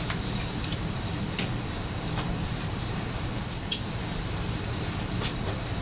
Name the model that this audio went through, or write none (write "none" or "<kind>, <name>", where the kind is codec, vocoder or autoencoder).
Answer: vocoder, BigVGAN v2